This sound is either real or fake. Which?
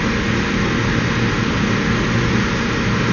real